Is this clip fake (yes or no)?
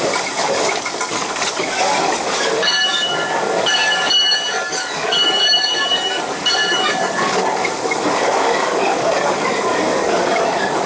yes